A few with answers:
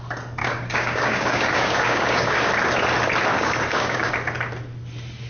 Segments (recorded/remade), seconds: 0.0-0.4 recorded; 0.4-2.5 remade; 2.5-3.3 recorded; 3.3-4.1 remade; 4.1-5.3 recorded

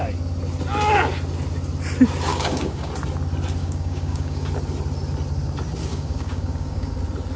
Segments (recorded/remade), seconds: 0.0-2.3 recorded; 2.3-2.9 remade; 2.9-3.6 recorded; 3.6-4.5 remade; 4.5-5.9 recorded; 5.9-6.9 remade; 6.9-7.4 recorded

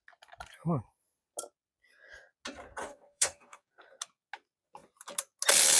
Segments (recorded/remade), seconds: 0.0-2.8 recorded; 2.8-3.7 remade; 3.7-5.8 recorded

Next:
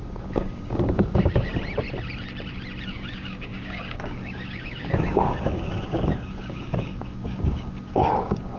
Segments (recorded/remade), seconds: 0.0-1.5 remade; 1.5-2.9 recorded; 2.9-8.6 remade

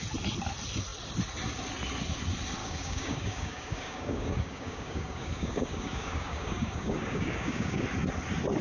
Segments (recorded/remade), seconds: 0.0-2.6 recorded; 2.6-7.8 remade; 7.8-8.6 recorded

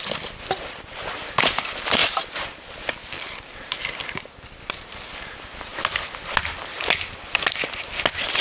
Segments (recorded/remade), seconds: 0.0-8.4 recorded

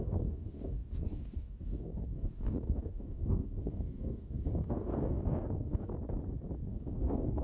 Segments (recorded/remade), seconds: 0.0-5.9 remade; 5.9-6.7 recorded; 6.7-7.4 remade

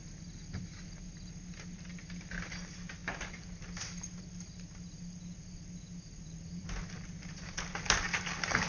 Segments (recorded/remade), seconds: 0.0-8.7 recorded